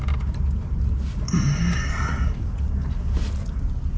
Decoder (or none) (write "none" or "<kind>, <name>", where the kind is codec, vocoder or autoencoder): none